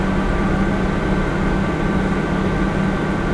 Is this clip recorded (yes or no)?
yes